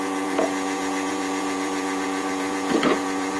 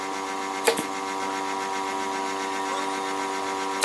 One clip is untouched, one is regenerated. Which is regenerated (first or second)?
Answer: first